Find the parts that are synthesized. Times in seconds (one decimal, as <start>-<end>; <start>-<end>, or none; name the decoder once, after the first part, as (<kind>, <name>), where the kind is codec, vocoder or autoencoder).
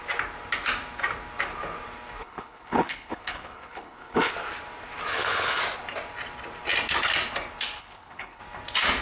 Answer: 2.2-4.3 (codec, HILCodec); 5.1-5.6; 7.8-8.4